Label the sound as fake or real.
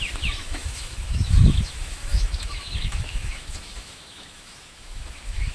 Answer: fake